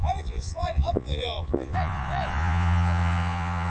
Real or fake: fake